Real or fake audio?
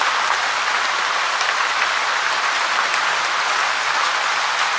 real